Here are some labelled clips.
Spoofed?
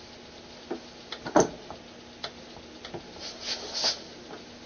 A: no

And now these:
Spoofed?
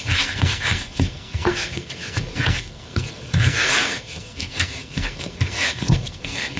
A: yes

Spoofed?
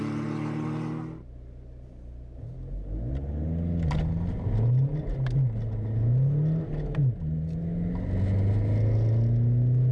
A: no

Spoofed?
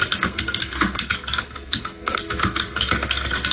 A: yes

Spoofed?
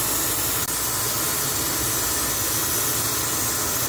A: no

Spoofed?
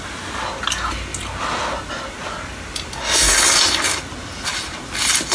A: no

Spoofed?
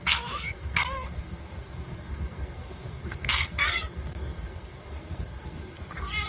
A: yes